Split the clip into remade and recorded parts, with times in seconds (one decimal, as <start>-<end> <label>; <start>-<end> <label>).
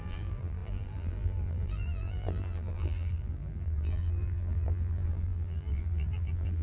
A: 0.0-6.6 remade